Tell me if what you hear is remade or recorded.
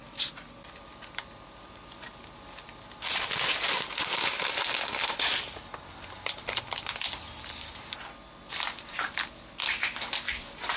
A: recorded